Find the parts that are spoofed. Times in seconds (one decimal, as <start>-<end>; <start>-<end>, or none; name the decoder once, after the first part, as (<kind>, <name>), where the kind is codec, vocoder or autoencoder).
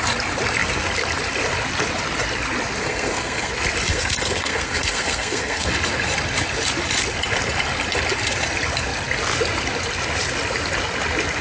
2.8-3.5 (codec, SNAC); 3.9-5.7